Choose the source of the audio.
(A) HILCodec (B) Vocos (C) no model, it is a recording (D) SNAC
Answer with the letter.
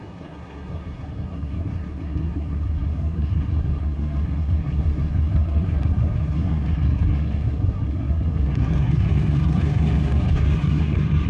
D